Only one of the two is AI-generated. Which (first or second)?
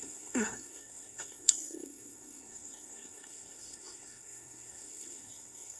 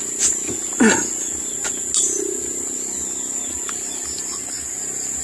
first